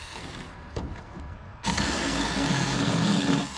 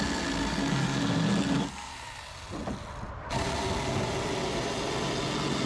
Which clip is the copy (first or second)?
first